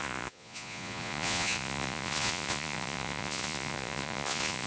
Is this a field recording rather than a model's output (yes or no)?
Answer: no